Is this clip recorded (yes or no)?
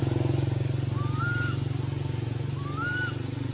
yes